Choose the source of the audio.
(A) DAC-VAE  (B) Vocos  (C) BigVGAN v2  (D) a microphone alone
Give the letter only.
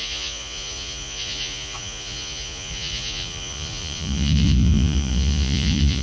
B